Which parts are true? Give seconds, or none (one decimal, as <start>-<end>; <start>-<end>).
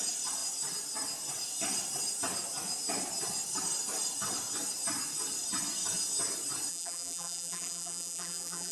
0.0-6.7